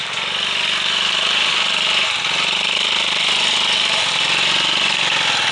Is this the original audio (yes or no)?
yes